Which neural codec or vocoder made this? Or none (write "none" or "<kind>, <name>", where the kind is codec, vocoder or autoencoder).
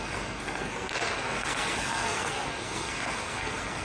codec, SNAC